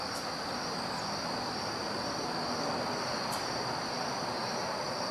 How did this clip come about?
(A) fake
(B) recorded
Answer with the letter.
B